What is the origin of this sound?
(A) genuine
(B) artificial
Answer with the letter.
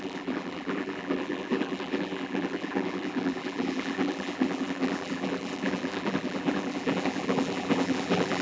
B